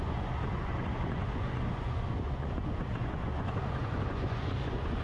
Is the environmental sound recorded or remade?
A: remade